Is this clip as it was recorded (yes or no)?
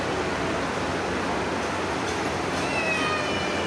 yes